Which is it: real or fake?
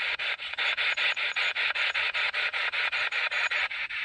fake